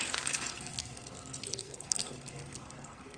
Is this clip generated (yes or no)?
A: yes